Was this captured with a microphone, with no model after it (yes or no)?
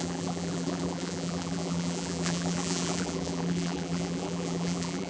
no